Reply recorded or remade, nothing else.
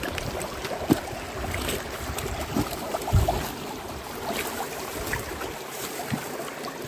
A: remade